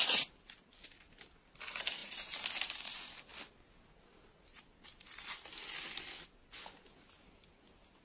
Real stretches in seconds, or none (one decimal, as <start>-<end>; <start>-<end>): 0.0-8.0